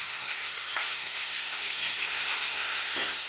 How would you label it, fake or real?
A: fake